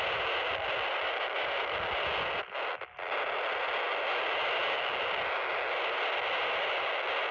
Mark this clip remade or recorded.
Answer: recorded